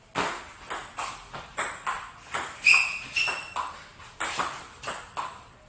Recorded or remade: recorded